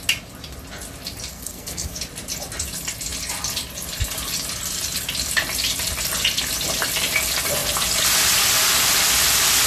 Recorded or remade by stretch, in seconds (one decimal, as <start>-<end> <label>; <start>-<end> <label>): 0.0-1.3 recorded; 1.3-2.0 remade; 2.0-9.7 recorded